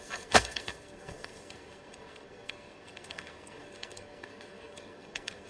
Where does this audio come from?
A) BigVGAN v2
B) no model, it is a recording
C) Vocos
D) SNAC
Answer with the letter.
D